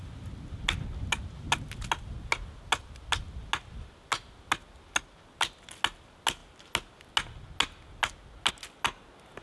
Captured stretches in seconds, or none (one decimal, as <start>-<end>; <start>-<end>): 0.0-9.4